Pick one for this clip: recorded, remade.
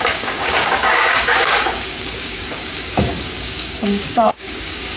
remade